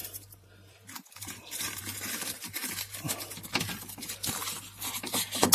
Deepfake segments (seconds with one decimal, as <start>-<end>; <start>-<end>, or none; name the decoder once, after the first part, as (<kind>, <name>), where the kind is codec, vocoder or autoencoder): 0.0-1.8 (vocoder, BigVGAN v2)